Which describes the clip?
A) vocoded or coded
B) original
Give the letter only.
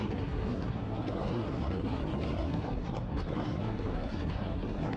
A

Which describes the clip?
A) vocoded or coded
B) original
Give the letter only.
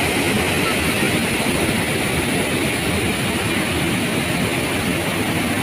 B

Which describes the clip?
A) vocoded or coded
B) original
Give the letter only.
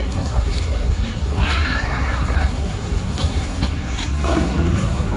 A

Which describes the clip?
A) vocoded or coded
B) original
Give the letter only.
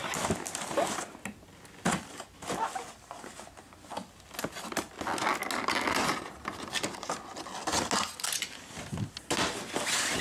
B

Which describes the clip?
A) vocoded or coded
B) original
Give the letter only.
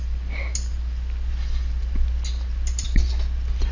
B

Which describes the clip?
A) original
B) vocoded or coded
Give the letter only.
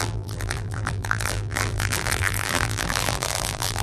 B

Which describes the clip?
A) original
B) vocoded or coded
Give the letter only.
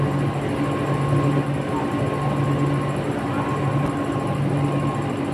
A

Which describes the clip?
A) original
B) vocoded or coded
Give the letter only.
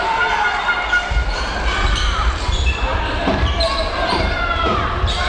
B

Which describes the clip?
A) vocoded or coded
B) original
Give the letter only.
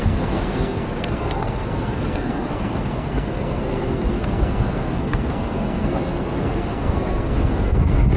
A